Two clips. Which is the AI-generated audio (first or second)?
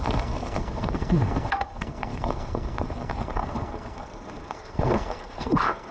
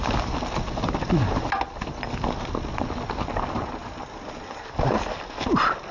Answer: first